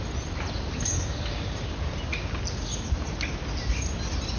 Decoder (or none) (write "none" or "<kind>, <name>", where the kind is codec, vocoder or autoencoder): none